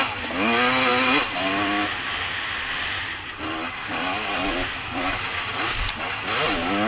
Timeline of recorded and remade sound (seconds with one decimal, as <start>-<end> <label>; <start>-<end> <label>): 0.0-6.9 recorded